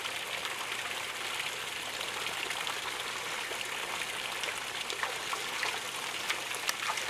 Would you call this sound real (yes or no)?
yes